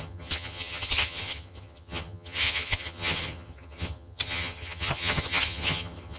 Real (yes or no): no